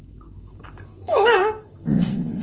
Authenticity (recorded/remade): remade